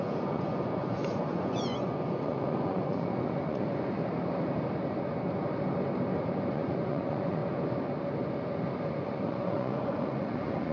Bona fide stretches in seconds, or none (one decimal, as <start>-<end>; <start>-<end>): 4.0-6.5; 7.4-8.9